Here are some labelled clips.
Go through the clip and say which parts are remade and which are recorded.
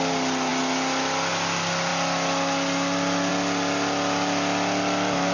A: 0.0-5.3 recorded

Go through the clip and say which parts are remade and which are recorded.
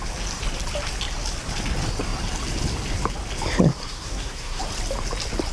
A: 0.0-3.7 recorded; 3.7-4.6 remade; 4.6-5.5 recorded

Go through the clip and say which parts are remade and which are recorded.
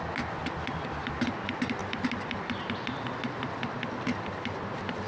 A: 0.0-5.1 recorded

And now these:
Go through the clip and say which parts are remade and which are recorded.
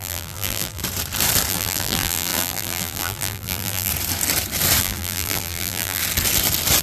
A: 0.0-0.8 remade; 0.8-1.5 recorded; 1.5-3.9 remade; 3.9-4.8 recorded; 4.8-6.0 remade; 6.0-6.8 recorded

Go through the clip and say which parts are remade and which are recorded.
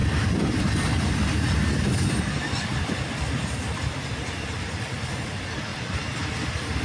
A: 0.0-3.8 remade; 3.8-5.7 recorded; 5.7-6.3 remade; 6.3-6.8 recorded